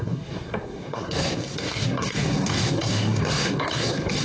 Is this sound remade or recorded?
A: remade